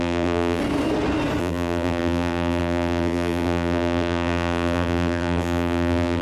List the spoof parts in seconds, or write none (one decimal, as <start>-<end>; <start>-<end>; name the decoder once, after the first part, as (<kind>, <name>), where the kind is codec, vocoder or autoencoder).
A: 0.0-0.6 (vocoder, BigVGAN v2); 1.4-6.2